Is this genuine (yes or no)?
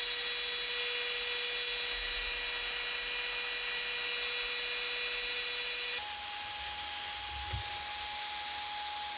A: yes